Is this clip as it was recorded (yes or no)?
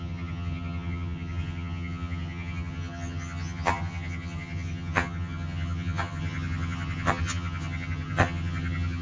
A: no